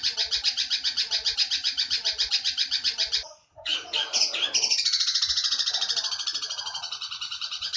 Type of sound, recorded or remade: remade